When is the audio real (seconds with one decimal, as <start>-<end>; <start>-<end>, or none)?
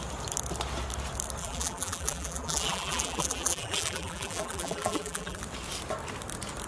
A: 0.0-1.4; 5.4-6.7